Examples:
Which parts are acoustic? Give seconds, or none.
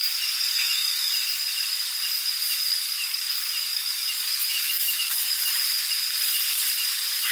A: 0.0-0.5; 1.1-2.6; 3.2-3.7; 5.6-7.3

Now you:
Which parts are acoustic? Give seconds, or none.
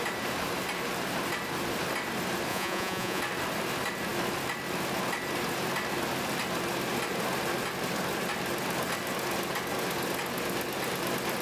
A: 0.0-2.5; 3.2-11.4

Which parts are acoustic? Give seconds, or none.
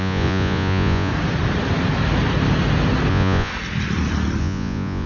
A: 1.1-3.1; 3.5-4.4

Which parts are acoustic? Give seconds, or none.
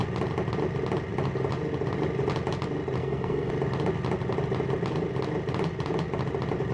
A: 0.0-3.0; 3.5-6.7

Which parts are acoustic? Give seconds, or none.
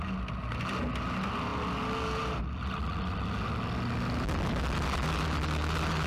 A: 0.0-6.1